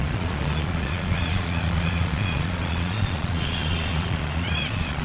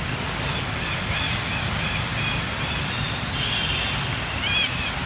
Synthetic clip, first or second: first